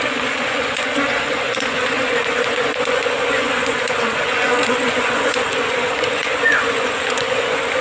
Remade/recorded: remade